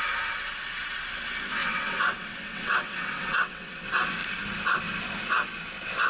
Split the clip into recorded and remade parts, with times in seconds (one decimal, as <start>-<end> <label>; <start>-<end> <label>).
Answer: 0.0-1.6 recorded; 1.6-3.8 remade; 3.8-6.1 recorded